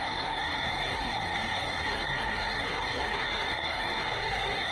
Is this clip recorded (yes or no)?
no